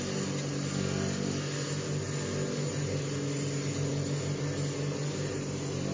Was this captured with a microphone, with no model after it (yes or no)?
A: yes